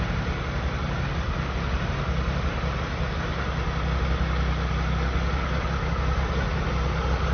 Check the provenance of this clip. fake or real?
real